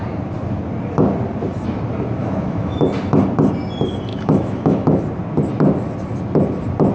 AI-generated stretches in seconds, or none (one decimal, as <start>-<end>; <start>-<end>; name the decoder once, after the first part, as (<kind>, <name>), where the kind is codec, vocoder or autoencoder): 2.2-2.8 (autoencoder, DAC-VAE); 4.1-5.0